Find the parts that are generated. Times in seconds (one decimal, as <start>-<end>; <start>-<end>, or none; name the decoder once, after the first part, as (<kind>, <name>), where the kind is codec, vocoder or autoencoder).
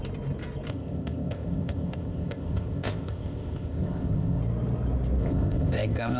0.7-4.4 (codec, ZipCodec); 5.2-6.2